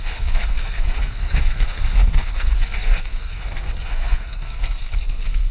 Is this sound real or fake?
fake